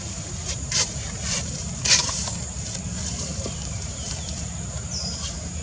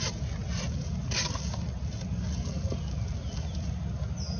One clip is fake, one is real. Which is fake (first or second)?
first